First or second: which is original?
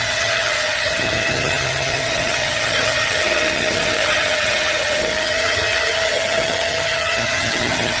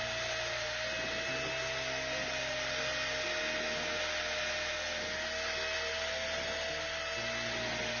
second